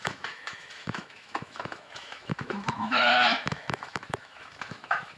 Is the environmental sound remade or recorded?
remade